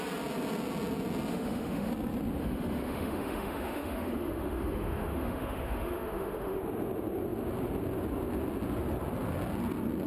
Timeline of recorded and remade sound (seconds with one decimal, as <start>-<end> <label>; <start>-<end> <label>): 0.0-1.3 recorded; 1.3-1.9 remade; 1.9-2.4 recorded; 2.4-6.6 remade; 6.6-10.1 recorded